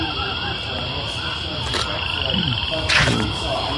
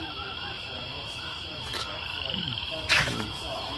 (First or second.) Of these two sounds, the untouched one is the first